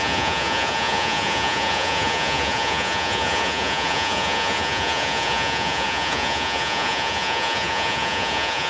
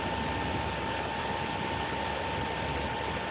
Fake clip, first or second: first